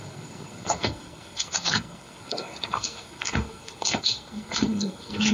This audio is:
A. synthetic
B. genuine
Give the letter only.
A